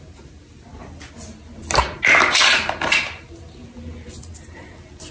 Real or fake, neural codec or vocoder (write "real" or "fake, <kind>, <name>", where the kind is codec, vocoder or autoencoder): real